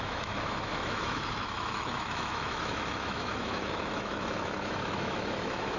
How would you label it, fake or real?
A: fake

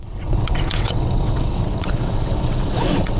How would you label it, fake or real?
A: fake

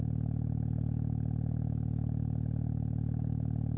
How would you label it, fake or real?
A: real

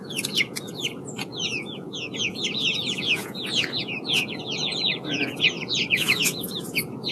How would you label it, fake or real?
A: fake